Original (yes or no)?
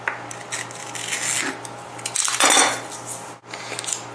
yes